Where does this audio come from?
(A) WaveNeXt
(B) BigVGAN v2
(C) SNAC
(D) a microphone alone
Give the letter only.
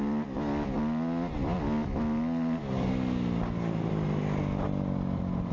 D